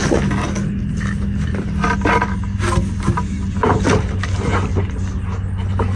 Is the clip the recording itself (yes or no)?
yes